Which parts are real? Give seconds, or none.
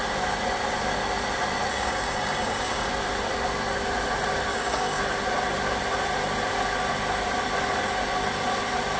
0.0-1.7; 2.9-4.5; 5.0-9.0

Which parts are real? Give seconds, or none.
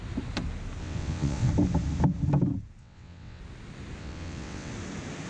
0.0-0.8; 1.5-2.8; 3.4-4.0; 4.7-5.3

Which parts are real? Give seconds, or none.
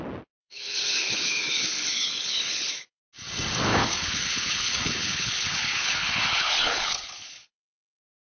0.0-0.4; 3.0-3.7; 8.0-8.4